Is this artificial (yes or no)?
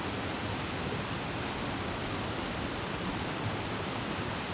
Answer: no